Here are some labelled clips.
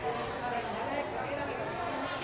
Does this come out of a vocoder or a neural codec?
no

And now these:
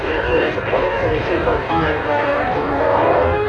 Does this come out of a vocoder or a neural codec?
yes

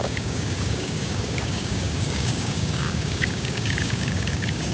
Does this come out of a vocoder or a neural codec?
yes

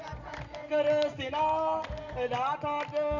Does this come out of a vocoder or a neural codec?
no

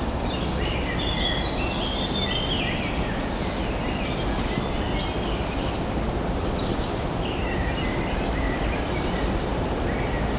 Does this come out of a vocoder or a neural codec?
no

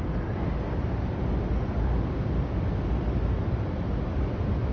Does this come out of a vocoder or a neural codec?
no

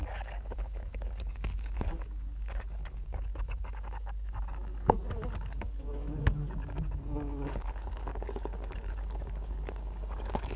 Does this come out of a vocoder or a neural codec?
yes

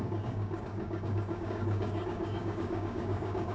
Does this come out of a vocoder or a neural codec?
yes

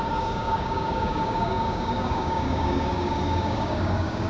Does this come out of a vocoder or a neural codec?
yes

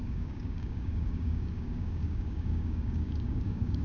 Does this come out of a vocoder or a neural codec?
yes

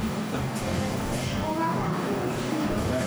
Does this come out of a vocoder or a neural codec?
yes